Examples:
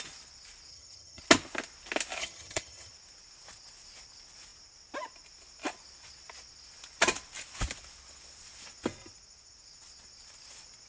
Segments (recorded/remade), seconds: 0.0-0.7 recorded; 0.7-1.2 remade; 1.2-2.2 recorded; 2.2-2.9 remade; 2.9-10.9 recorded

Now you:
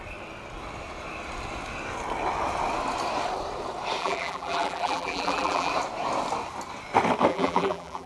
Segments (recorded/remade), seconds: 0.0-4.0 recorded; 4.0-5.7 remade; 5.7-7.3 recorded; 7.3-8.1 remade